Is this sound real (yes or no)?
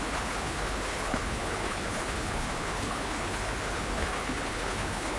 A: no